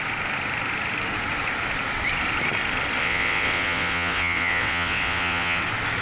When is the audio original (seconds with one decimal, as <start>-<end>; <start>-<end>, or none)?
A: 0.0-3.0; 5.6-6.0